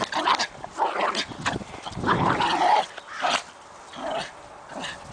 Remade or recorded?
recorded